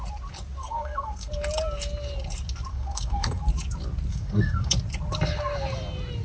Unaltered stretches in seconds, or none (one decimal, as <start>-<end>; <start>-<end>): 0.0-0.6; 1.3-2.7; 3.4-4.1; 4.7-6.2